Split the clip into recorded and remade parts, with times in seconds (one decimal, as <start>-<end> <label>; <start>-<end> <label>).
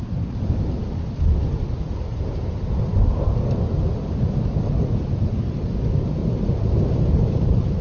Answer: 0.0-2.1 recorded; 2.1-2.8 remade; 2.8-6.2 recorded; 6.2-7.8 remade